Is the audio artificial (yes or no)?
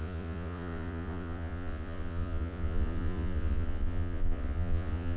yes